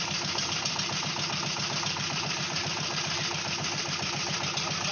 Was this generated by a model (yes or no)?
no